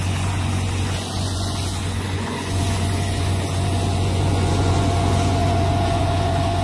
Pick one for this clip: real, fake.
fake